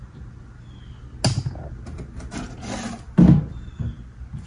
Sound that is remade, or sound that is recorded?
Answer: recorded